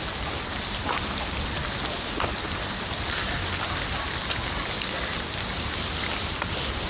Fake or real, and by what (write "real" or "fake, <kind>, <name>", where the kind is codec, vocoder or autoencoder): real